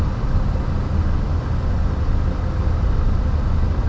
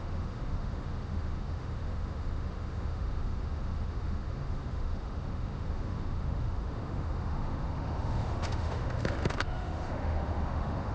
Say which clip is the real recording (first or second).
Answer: first